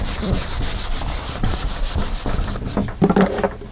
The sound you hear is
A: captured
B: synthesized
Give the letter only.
A